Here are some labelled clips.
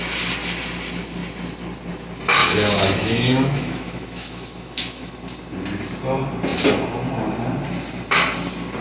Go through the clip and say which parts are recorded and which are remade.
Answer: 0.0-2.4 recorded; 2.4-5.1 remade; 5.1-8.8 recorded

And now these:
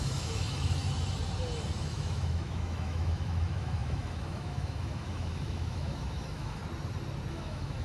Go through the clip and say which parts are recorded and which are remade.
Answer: 0.0-0.8 remade; 0.8-1.8 recorded; 1.8-6.6 remade; 6.6-7.3 recorded; 7.3-7.8 remade